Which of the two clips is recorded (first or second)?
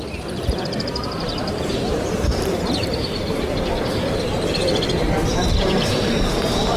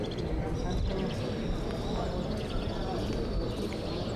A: second